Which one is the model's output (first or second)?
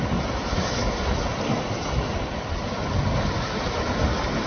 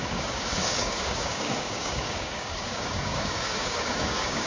second